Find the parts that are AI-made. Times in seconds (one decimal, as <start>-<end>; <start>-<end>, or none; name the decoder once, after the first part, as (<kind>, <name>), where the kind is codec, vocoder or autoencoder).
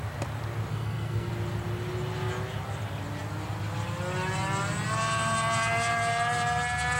0.7-1.3 (codec, SNAC)